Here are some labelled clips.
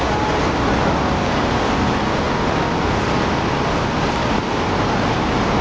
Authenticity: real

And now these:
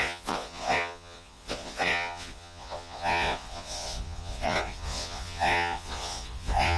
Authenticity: fake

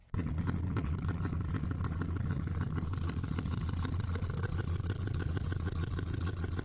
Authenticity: fake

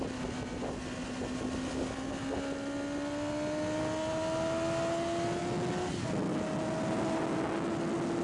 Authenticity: real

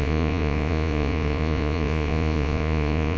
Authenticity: fake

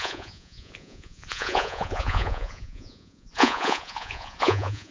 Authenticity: fake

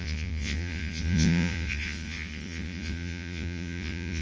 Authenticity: fake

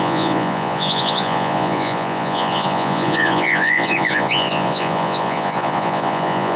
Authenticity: fake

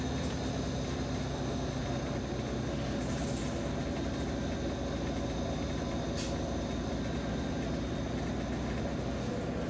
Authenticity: real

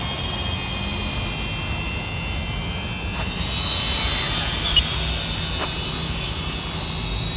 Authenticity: real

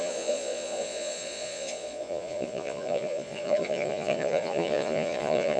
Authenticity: fake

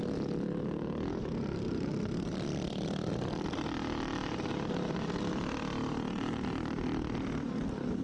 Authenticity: real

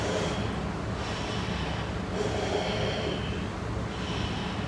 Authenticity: real